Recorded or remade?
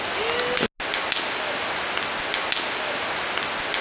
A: recorded